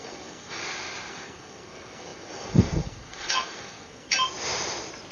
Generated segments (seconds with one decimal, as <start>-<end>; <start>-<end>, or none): 0.0-0.6; 1.1-4.1